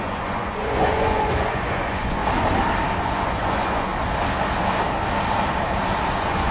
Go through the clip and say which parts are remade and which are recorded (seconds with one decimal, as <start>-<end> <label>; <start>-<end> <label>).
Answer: 0.0-2.2 remade; 2.2-3.0 recorded; 3.0-3.9 remade; 3.9-6.1 recorded; 6.1-6.5 remade